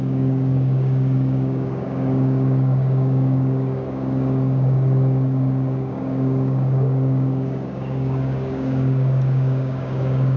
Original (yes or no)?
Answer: no